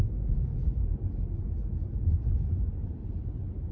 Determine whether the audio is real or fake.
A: real